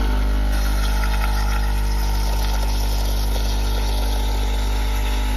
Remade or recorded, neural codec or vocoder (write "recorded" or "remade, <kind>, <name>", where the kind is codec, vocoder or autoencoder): recorded